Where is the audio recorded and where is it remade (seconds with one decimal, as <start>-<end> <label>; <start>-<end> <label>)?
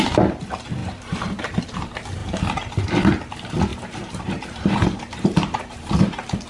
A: 0.0-0.8 recorded; 0.8-1.6 remade; 1.6-3.7 recorded; 3.7-5.9 remade; 5.9-6.5 recorded